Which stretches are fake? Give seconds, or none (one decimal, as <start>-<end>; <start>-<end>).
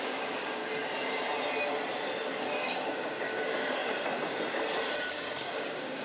0.0-0.6; 2.4-3.8; 5.1-6.0